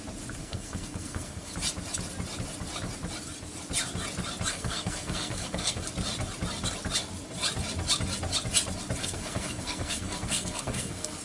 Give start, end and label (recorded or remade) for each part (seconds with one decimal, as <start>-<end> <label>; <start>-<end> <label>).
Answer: 0.0-0.4 recorded; 0.4-1.5 remade; 1.5-4.5 recorded; 4.5-5.8 remade; 5.8-9.0 recorded; 9.0-11.2 remade